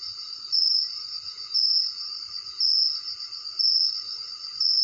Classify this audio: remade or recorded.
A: recorded